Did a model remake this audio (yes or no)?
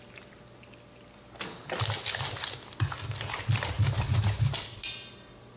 no